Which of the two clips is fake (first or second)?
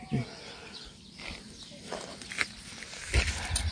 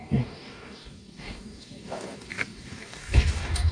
second